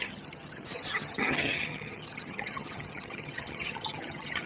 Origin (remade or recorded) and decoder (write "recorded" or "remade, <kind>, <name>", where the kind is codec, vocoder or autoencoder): remade, vocoder, HiFi-GAN